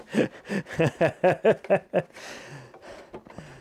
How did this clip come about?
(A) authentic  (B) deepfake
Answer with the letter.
A